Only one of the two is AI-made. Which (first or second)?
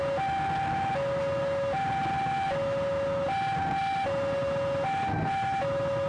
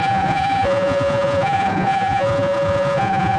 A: second